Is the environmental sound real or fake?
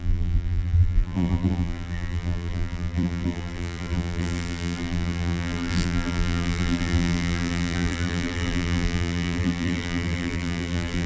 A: fake